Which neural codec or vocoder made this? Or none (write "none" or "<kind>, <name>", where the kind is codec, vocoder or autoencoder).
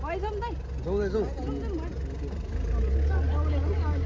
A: none